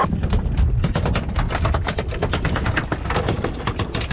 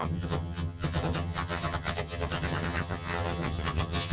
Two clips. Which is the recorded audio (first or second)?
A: first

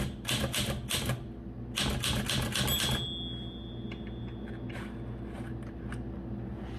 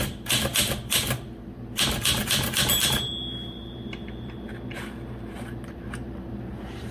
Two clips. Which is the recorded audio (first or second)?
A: first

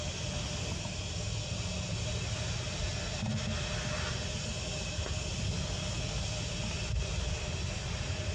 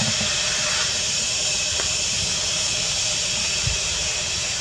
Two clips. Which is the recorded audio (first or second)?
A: first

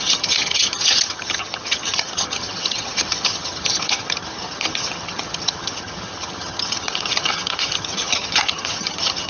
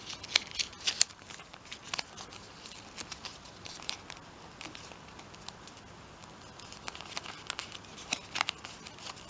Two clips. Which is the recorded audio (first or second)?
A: second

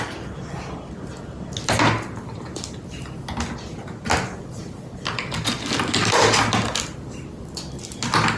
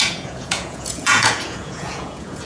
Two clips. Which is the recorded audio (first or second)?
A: first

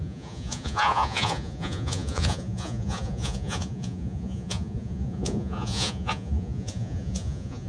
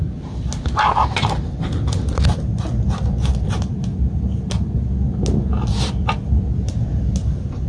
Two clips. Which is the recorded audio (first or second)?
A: second